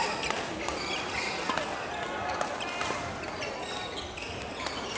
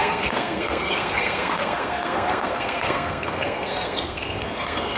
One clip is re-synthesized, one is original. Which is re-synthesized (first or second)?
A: second